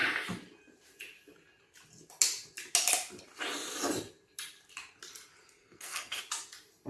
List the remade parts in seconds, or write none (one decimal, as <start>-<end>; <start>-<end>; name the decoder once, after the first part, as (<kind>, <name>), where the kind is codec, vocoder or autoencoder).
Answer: 5.6-6.2 (codec, SNAC)